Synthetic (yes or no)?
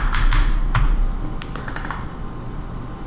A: no